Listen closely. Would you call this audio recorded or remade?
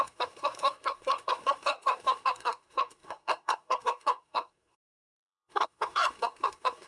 remade